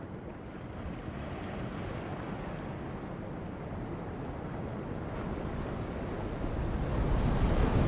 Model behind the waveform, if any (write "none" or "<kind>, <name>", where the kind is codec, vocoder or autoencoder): none